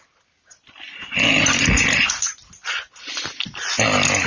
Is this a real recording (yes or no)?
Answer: yes